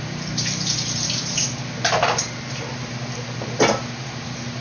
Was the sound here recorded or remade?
recorded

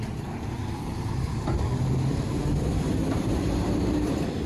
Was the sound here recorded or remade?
remade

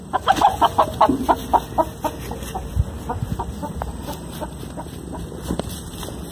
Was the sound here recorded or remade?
recorded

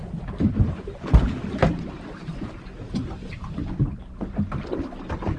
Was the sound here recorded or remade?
recorded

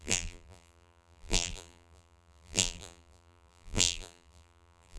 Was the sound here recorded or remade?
remade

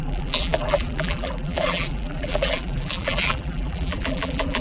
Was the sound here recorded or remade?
remade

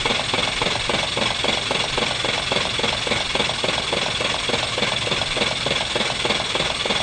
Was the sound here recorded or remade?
remade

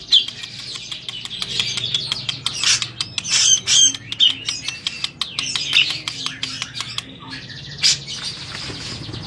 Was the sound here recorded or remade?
recorded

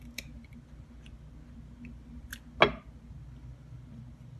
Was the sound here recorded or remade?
recorded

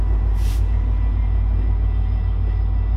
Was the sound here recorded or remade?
recorded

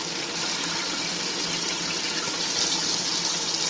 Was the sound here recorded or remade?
recorded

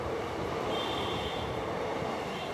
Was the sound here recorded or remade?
remade